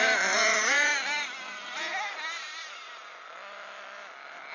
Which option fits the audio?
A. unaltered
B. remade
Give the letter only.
A